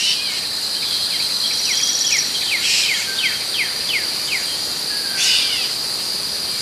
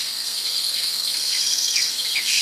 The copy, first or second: second